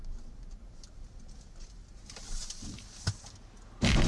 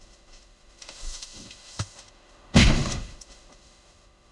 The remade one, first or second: second